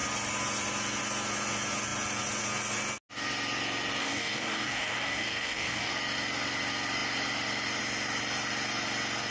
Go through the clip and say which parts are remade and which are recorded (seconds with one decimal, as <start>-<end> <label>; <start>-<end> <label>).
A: 0.0-4.0 recorded; 4.0-5.9 remade; 5.9-9.3 recorded